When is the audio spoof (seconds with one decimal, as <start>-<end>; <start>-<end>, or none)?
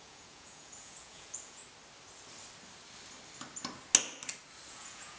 0.0-1.6; 4.7-5.2